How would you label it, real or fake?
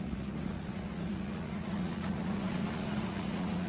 fake